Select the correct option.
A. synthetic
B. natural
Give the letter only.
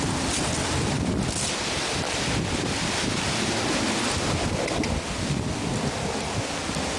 B